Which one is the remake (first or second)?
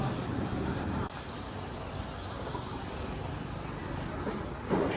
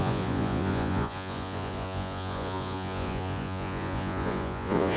second